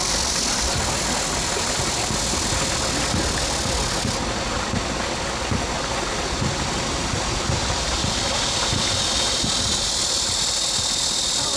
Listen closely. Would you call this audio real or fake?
real